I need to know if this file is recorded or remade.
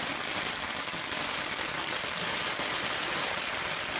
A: recorded